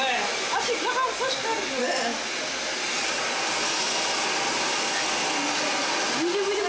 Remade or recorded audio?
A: recorded